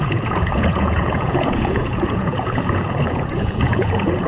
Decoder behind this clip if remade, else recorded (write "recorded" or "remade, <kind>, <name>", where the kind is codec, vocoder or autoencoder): remade, vocoder, Vocos